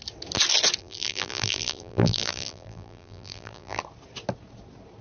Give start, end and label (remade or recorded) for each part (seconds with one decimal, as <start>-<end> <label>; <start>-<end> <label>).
0.0-0.8 recorded; 0.8-3.8 remade; 3.8-5.0 recorded